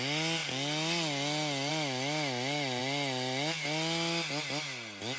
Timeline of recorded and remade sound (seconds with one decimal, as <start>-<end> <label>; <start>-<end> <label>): 0.0-5.2 recorded